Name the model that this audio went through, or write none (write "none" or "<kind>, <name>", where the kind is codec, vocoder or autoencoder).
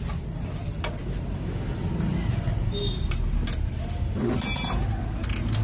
none